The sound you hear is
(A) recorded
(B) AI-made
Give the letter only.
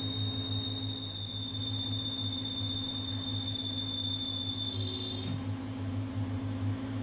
A